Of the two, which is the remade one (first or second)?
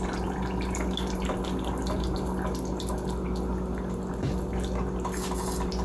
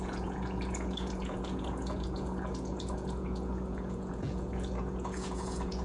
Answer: second